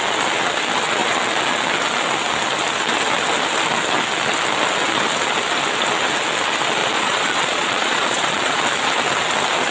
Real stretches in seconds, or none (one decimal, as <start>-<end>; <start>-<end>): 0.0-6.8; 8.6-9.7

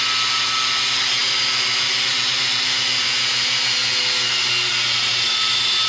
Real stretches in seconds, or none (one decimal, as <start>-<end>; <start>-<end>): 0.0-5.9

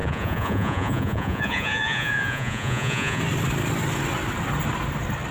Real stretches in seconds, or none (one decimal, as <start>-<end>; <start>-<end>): 3.2-5.3